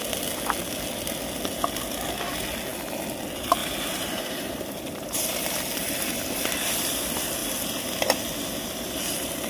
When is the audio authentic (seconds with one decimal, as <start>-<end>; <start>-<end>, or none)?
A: 0.0-3.6; 6.1-9.5